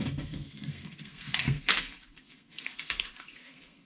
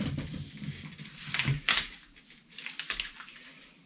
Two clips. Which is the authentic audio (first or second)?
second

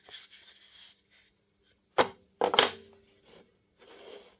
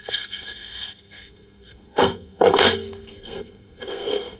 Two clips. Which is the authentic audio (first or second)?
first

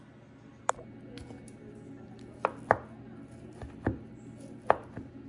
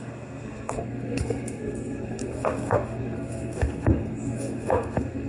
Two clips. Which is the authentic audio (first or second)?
first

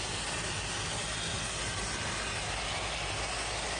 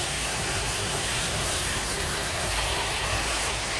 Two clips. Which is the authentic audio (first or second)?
first